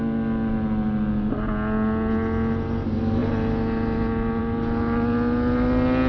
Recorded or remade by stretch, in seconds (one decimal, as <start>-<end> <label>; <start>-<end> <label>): 0.0-6.1 recorded